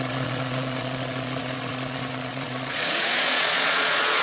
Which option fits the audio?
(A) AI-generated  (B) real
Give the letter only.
A